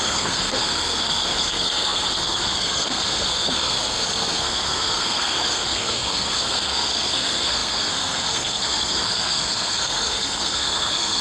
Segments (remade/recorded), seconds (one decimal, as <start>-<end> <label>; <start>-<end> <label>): 0.0-11.2 remade